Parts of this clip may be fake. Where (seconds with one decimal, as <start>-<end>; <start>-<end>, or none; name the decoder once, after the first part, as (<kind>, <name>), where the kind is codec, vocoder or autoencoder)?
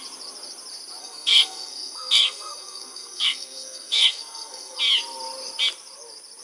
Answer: 1.0-4.8 (codec, SNAC)